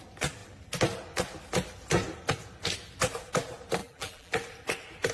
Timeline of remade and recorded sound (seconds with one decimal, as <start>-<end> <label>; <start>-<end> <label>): 0.0-3.8 recorded; 3.8-4.3 remade; 4.3-5.1 recorded